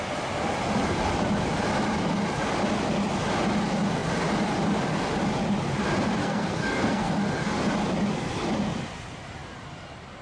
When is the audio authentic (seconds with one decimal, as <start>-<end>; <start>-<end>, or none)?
0.0-6.2; 7.1-10.2